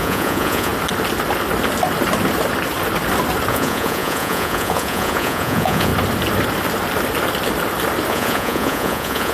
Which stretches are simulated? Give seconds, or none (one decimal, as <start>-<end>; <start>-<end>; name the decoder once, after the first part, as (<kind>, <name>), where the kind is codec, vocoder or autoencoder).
0.0-0.7 (vocoder, Vocos); 3.5-5.9; 8.1-9.3